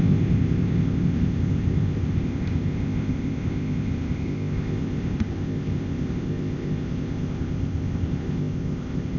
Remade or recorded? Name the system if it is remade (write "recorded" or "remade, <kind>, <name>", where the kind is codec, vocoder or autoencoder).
remade, codec, ZipCodec